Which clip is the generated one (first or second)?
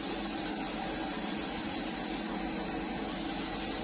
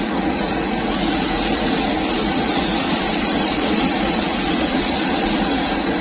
second